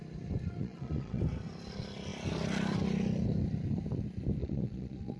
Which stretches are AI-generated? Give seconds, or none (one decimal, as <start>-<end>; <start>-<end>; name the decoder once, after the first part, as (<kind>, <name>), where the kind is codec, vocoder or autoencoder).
0.6-1.2 (vocoder, Vocos); 4.4-5.2